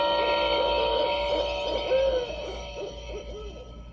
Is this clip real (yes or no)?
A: yes